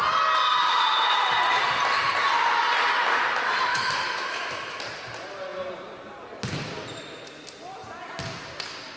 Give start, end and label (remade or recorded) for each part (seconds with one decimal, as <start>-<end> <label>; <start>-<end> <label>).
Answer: 0.0-3.7 recorded; 3.7-4.8 remade; 4.8-9.0 recorded